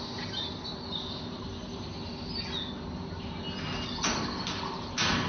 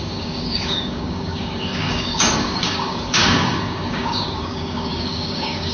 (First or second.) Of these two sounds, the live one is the first